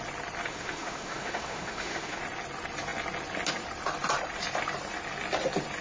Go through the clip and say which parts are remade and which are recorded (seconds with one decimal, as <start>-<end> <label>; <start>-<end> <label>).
0.0-0.5 recorded; 0.5-2.2 remade; 2.2-5.8 recorded